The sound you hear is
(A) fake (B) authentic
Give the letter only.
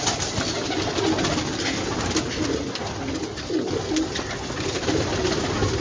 B